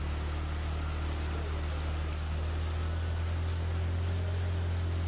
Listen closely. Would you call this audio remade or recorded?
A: recorded